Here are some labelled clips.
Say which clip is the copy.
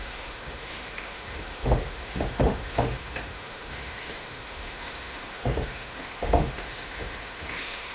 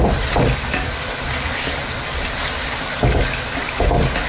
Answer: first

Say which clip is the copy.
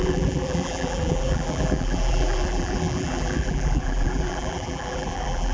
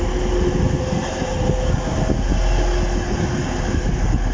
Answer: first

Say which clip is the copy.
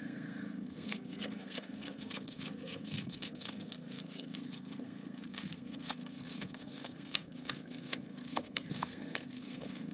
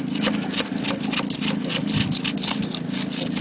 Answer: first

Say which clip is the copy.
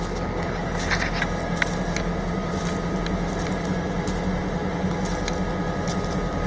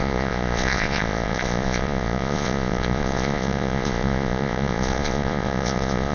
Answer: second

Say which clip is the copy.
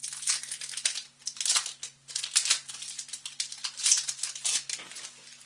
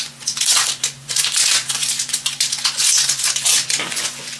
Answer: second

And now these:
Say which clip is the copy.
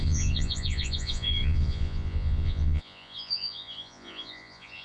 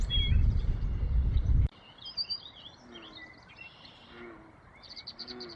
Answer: first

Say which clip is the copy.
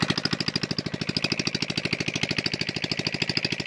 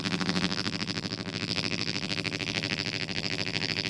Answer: second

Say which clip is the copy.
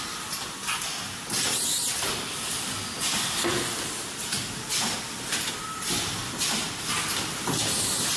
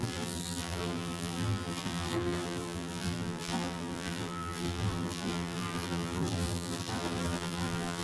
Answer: second